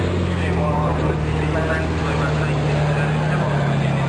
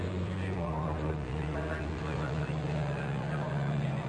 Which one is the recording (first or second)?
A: first